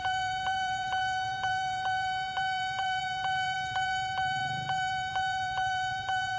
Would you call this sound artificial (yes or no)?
yes